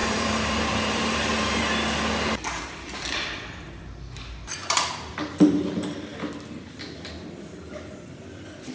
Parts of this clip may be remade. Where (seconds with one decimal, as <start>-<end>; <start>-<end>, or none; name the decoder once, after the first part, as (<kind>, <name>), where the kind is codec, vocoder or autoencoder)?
0.0-1.6 (vocoder, BigVGAN v2)

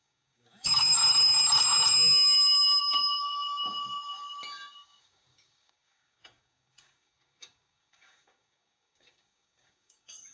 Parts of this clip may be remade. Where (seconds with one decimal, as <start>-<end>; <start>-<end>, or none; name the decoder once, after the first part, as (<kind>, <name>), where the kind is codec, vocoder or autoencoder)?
0.0-1.0 (codec, DAC); 2.8-10.3

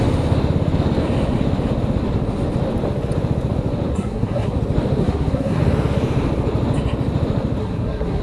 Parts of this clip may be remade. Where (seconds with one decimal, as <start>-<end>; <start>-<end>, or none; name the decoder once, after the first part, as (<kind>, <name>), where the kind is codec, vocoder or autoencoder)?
3.9-4.6 (codec, SNAC); 5.0-5.6; 7.6-8.2

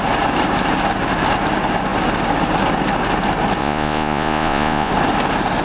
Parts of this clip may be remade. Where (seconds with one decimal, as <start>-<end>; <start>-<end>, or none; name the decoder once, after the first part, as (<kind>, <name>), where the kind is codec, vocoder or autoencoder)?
3.6-4.9 (vocoder, Vocos)

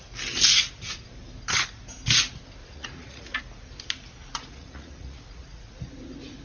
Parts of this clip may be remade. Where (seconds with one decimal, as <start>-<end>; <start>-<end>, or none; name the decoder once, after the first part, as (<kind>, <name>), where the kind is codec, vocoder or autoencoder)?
2.6-3.4 (vocoder, Vocos); 4.2-5.9

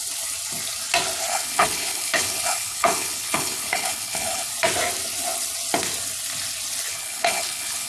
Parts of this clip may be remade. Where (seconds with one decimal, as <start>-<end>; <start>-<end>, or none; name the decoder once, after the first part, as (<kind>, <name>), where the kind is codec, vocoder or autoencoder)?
1.3-4.5 (codec, HILCodec); 6.9-7.9

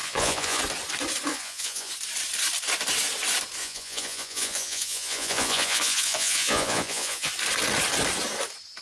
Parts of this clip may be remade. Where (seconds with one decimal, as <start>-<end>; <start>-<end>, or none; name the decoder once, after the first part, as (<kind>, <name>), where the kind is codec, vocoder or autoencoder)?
0.0-0.6 (vocoder, Vocos); 1.3-1.9; 3.6-7.3

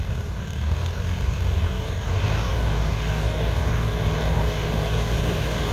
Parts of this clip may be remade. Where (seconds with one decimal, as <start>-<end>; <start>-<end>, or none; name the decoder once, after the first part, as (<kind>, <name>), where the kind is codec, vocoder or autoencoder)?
0.0-5.7 (codec, DAC)